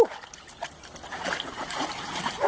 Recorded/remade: recorded